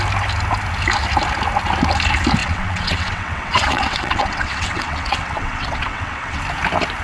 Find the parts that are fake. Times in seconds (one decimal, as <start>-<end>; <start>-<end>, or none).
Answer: 2.4-6.4